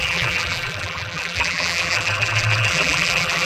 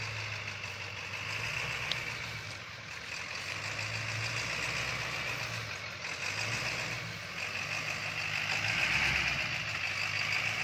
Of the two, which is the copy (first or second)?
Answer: first